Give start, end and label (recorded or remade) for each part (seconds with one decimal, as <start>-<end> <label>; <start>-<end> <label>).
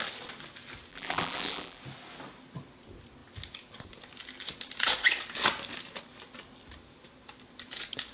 0.0-0.9 recorded; 0.9-1.8 remade; 1.8-8.1 recorded